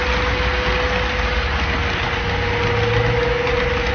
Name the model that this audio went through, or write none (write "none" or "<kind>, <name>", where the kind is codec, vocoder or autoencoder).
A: none